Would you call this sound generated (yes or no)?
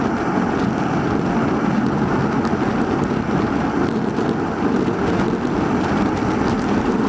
no